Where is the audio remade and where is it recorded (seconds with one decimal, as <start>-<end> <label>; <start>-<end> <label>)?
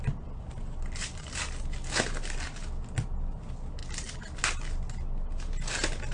0.0-6.1 recorded